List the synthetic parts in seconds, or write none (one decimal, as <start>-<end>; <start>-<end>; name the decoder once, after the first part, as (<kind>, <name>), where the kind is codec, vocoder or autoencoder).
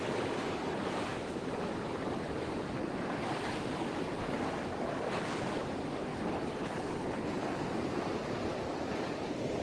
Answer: 6.1-7.7 (codec, HILCodec)